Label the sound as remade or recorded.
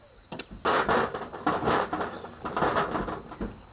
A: recorded